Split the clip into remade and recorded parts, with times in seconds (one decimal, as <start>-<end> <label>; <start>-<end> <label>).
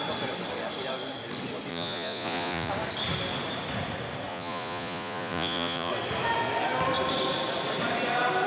0.0-1.7 recorded; 1.7-2.7 remade; 2.7-4.3 recorded; 4.3-5.9 remade; 5.9-8.5 recorded